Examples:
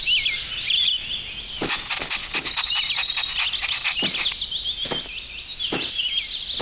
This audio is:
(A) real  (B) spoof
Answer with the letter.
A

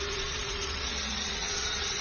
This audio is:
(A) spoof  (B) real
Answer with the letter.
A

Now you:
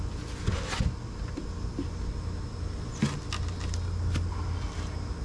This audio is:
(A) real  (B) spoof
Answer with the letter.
A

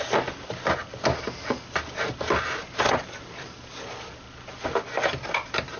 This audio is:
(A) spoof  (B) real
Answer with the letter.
B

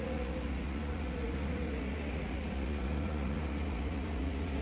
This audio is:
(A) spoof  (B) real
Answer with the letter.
A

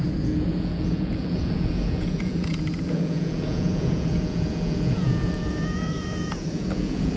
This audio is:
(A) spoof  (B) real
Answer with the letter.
A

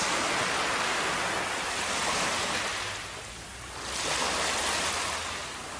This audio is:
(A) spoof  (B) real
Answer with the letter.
B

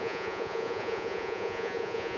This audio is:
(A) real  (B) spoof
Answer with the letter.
B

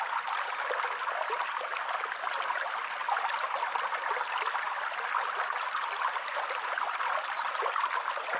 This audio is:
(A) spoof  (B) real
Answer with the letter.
B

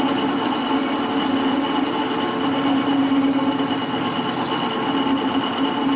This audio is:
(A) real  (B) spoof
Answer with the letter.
A